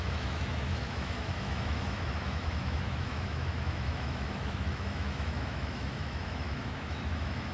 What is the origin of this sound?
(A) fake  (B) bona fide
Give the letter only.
A